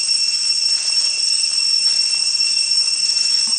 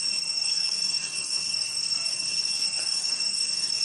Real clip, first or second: first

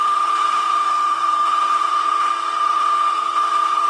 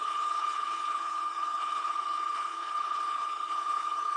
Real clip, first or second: first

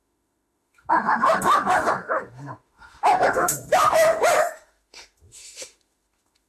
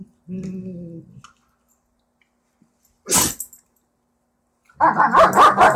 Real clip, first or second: second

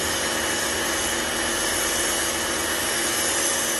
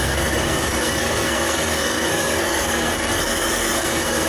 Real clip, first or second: first